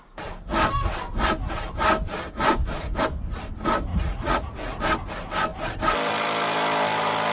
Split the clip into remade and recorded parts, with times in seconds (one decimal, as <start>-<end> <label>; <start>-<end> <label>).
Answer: 0.0-3.9 recorded; 3.9-4.8 remade; 4.8-7.3 recorded